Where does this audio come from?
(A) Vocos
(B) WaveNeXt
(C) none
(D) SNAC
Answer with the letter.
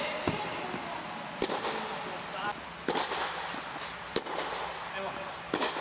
C